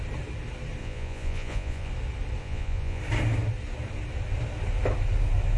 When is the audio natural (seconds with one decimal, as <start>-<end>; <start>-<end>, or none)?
0.0-0.8; 1.9-2.4; 3.0-5.6